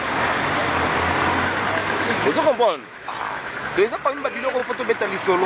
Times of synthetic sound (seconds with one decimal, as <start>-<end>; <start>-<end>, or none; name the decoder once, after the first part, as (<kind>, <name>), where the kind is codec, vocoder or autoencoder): 1.8-3.6 (autoencoder, DAC-VAE)

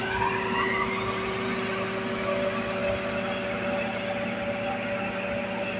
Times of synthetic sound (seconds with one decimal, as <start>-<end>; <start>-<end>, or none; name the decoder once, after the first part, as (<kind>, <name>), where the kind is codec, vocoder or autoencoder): none